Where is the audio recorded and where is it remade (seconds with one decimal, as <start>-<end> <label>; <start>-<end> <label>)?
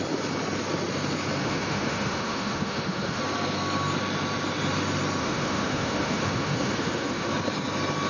0.0-1.4 recorded; 1.4-3.2 remade; 3.2-5.2 recorded; 5.2-7.3 remade; 7.3-8.1 recorded